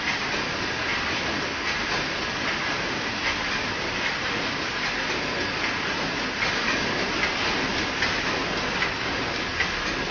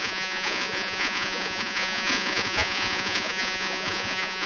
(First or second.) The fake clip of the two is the second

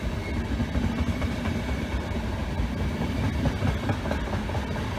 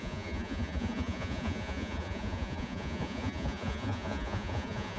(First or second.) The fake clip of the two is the second